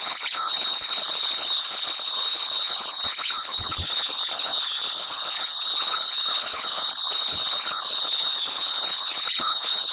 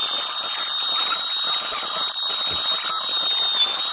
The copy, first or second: first